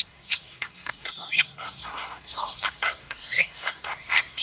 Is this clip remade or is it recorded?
remade